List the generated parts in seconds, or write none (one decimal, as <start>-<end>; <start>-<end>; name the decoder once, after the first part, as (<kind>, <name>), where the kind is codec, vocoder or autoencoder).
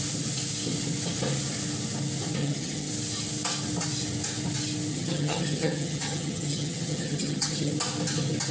2.4-2.9 (vocoder, HiFi-GAN); 4.9-7.7